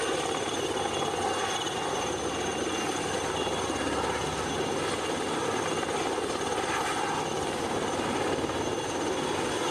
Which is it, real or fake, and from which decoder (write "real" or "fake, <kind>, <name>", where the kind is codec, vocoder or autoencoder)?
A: real